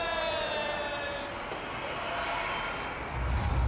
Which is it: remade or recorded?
recorded